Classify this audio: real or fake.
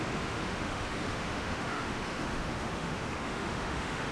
fake